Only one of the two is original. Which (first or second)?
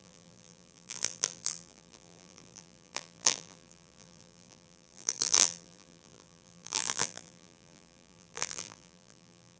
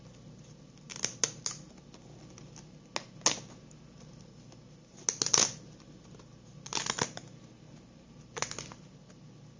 second